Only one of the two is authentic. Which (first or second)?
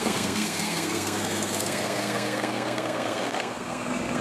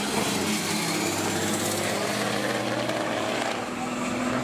second